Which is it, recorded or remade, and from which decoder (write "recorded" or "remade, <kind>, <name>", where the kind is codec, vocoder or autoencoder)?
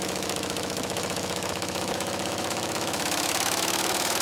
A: remade, autoencoder, DAC-VAE